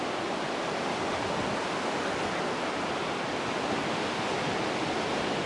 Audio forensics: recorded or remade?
recorded